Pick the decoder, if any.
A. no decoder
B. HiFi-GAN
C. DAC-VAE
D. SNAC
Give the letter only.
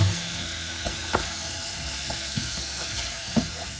D